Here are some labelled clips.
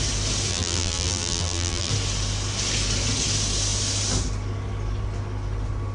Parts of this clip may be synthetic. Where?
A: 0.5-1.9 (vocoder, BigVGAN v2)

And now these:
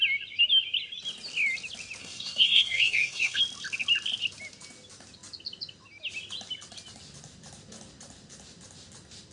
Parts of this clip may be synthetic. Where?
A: 2.0-3.4 (codec, SNAC)

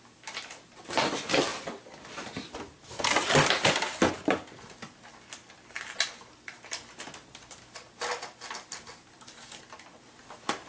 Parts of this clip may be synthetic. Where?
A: none

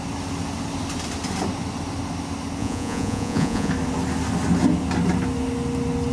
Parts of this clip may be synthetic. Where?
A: 2.6-3.7 (vocoder, Vocos)

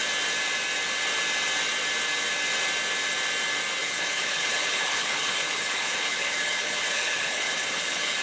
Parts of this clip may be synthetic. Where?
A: 3.8-8.2 (codec, HILCodec)